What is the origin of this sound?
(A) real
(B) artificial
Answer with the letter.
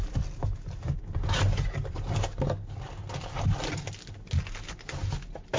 A